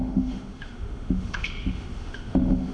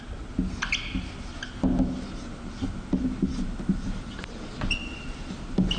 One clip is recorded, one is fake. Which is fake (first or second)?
first